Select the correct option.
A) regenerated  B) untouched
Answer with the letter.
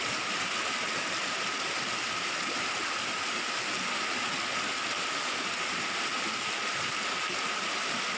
B